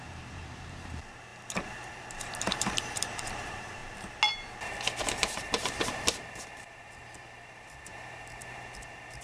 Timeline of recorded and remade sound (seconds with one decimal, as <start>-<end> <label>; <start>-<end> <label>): 0.0-3.8 remade; 3.8-5.0 recorded; 5.0-9.2 remade